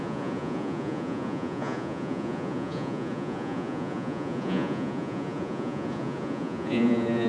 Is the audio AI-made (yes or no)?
yes